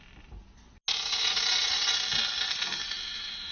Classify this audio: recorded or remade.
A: recorded